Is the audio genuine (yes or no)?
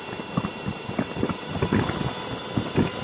yes